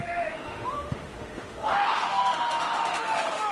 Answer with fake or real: fake